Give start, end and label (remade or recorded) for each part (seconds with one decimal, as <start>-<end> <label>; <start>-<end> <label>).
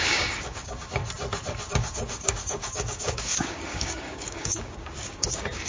0.0-1.0 remade; 1.0-1.7 recorded; 1.7-5.7 remade